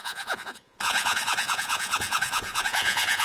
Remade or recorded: remade